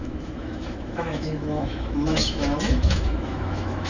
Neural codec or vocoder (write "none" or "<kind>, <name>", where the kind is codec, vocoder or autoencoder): autoencoder, DAC-VAE